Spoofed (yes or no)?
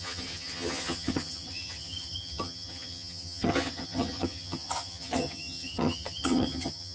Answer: yes